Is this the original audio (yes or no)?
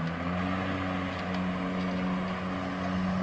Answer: yes